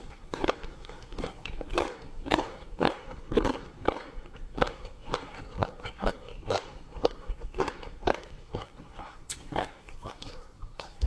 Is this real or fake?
fake